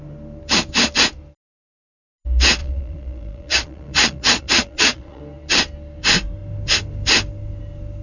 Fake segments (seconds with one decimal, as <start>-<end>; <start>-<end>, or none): 2.6-5.2